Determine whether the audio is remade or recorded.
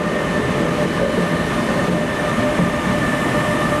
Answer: recorded